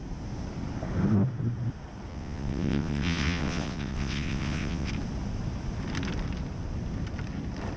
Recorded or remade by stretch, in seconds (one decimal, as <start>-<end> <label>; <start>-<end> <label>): 0.0-2.1 recorded; 2.1-4.9 remade; 4.9-7.8 recorded